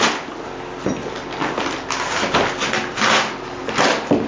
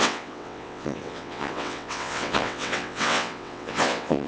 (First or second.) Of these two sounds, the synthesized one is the second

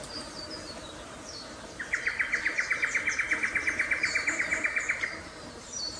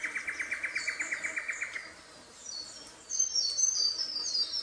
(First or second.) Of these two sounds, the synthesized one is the first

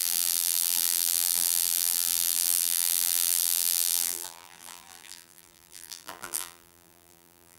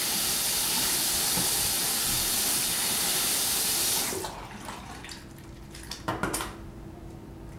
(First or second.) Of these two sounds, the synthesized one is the first